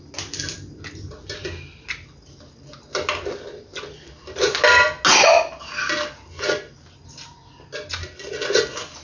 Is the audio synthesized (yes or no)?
no